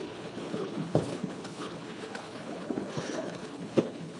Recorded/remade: remade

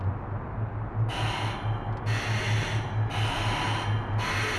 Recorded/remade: recorded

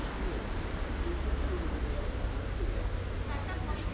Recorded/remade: recorded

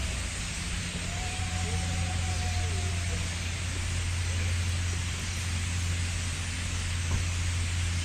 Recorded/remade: recorded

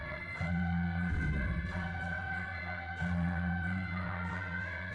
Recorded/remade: remade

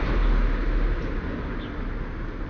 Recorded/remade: recorded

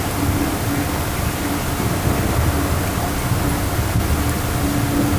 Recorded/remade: recorded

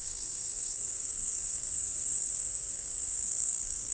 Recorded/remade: remade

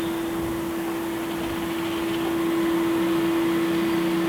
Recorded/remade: recorded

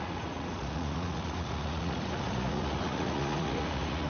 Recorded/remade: remade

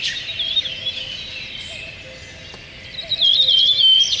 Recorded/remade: recorded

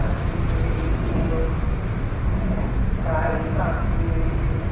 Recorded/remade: recorded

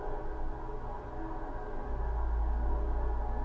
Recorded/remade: recorded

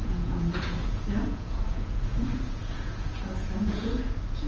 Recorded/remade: remade